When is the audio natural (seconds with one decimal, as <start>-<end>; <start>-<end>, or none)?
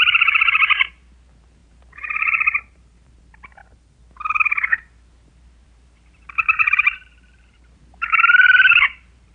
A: 3.6-5.3